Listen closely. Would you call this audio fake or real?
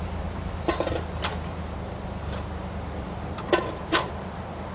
fake